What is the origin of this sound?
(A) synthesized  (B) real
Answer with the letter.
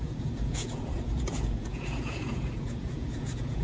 A